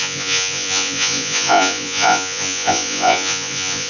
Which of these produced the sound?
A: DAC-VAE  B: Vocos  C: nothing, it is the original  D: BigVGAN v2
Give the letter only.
B